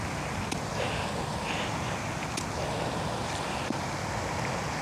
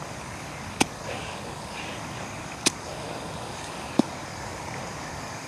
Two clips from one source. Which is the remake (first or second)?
second